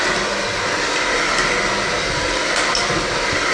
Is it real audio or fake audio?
real